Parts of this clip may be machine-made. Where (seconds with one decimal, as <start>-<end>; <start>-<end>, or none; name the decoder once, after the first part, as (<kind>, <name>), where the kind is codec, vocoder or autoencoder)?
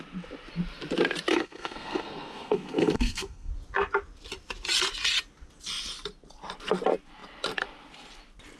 1.3-3.5 (codec, SNAC)